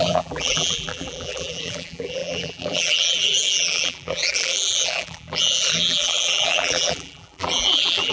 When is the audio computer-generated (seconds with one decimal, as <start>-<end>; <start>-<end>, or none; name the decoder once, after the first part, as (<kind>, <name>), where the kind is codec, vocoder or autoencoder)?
0.0-8.1 (vocoder, BigVGAN v2)

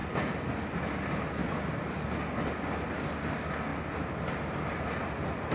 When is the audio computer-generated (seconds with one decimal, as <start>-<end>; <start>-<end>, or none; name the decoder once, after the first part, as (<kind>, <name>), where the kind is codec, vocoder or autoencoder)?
0.0-0.7 (vocoder, BigVGAN v2)